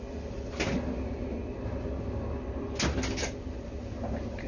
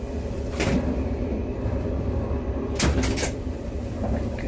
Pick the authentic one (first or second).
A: first